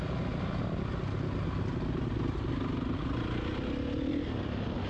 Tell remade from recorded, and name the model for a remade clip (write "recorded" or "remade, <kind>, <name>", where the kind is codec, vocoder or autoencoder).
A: recorded